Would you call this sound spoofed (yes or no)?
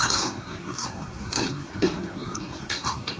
yes